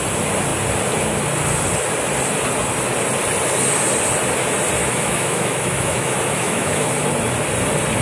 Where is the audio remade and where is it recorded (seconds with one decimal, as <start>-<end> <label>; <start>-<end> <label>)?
0.0-4.8 recorded; 4.8-6.9 remade; 6.9-8.0 recorded